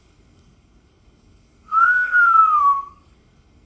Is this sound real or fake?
fake